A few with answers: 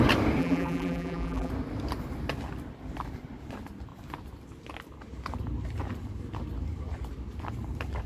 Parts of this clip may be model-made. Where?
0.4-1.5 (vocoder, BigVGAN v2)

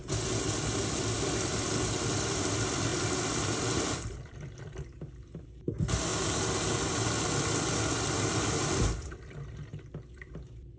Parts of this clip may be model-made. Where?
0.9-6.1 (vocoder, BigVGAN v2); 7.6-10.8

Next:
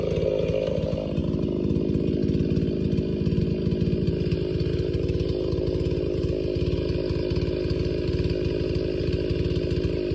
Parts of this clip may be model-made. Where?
none